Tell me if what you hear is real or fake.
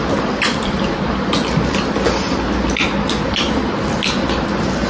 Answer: real